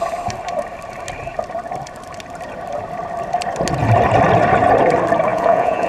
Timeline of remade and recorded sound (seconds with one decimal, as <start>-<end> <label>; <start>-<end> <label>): 0.0-5.3 recorded; 5.3-5.9 remade